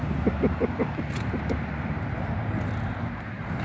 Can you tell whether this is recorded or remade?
recorded